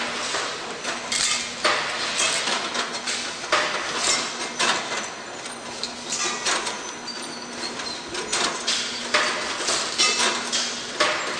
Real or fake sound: real